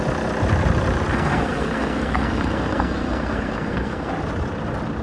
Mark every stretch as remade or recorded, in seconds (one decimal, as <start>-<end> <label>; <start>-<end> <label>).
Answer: 0.0-1.1 recorded; 1.1-4.1 remade; 4.1-5.0 recorded